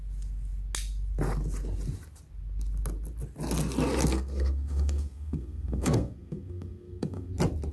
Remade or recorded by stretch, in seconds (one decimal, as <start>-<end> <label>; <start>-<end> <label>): 0.0-4.1 recorded; 4.1-7.3 remade; 7.3-7.7 recorded